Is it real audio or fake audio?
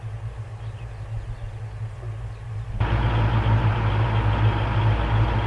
real